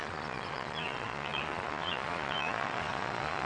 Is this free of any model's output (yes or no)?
no